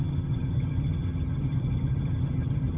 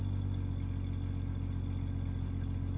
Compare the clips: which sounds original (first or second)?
second